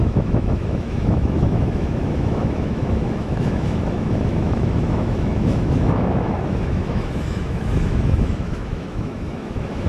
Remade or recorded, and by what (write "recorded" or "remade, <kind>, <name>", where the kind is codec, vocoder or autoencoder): remade, autoencoder, DAC-VAE